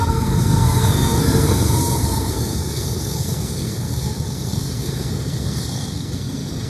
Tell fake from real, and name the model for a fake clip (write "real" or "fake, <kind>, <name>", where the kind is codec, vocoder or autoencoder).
fake, codec, SNAC